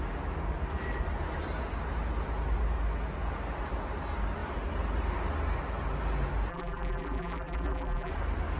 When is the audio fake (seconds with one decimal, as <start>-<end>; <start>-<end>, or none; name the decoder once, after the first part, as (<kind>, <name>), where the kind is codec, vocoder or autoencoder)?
6.5-8.1 (vocoder, BigVGAN v2)